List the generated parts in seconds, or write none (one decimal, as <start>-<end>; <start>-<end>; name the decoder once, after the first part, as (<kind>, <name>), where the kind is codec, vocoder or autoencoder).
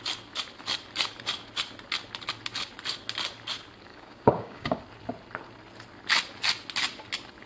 3.9-4.8 (codec, DAC)